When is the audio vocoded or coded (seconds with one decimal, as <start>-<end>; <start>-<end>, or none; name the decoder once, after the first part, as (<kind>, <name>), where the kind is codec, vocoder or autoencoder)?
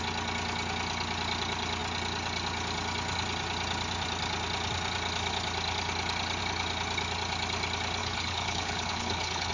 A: 8.0-9.5 (codec, HILCodec)